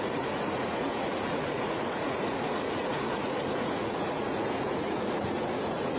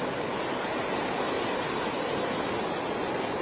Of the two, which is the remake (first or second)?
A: first